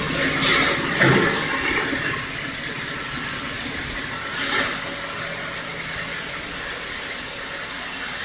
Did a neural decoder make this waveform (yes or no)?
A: no